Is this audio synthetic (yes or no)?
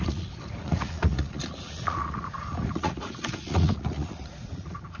yes